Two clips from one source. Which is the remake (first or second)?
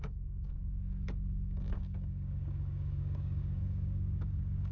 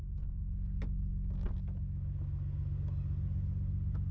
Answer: first